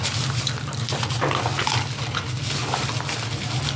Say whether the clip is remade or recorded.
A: recorded